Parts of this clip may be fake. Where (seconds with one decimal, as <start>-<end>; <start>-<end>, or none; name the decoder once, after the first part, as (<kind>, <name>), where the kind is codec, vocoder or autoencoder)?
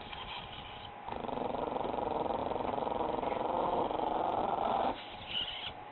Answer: none